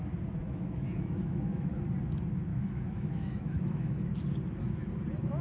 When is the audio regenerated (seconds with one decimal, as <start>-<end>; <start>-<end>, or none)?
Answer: 0.4-1.7; 2.5-4.1